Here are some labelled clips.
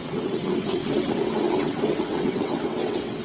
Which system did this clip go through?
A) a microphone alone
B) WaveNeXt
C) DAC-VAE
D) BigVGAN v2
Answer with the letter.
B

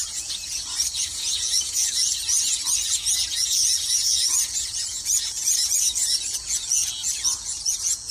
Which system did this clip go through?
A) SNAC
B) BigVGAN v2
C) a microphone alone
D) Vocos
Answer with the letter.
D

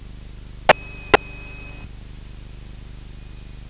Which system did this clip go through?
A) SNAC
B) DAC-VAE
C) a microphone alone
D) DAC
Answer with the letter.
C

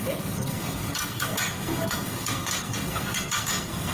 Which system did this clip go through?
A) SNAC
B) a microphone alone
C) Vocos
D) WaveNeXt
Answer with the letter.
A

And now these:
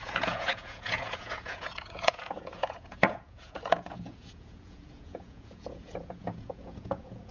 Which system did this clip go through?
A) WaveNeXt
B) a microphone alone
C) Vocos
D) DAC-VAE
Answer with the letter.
C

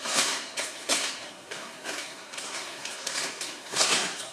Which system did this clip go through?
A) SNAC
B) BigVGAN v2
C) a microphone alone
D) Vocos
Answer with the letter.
A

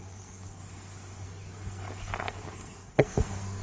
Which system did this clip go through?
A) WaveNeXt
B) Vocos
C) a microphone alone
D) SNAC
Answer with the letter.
D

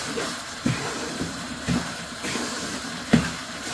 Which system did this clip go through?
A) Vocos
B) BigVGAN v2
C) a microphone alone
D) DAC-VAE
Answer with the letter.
B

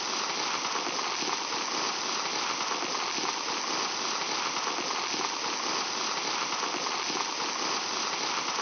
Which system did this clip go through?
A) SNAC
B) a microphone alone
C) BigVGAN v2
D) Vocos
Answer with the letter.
B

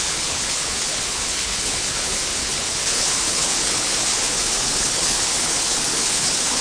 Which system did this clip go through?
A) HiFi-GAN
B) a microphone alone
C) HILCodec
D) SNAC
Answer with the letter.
C